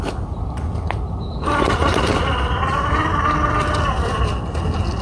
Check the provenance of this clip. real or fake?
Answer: real